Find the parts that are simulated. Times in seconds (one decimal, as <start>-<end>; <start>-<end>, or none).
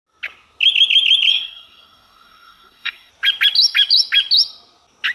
1.3-3.1